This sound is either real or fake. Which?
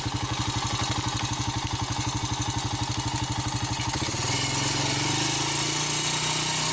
real